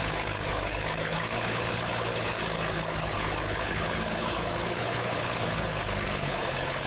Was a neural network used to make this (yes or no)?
yes